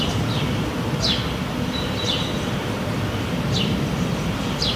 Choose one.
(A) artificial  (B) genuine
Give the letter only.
A